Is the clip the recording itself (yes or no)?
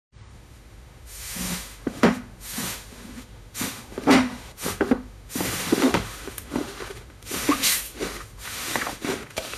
no